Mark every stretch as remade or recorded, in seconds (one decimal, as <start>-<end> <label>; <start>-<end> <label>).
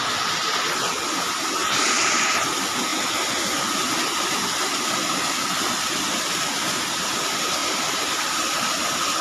0.0-1.6 recorded; 1.6-2.3 remade; 2.3-7.6 recorded; 7.6-9.2 remade